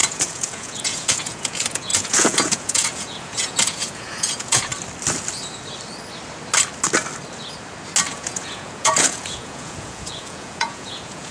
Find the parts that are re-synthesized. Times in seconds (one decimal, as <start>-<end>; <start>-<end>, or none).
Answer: 0.0-4.7; 8.1-11.3